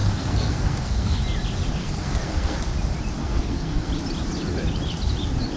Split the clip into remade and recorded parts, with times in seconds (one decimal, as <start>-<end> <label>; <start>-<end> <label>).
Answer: 0.0-1.2 remade; 1.2-1.8 recorded; 1.8-2.6 remade; 2.6-3.2 recorded; 3.2-3.9 remade; 3.9-5.6 recorded